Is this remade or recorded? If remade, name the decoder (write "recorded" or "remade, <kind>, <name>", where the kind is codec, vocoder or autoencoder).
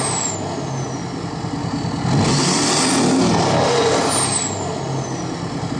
recorded